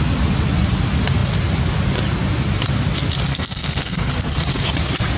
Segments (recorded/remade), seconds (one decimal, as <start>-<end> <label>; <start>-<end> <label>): 0.0-3.3 recorded; 3.3-4.1 remade; 4.1-5.2 recorded